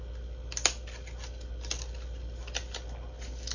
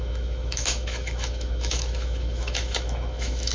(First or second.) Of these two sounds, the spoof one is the second